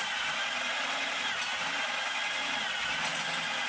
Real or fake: real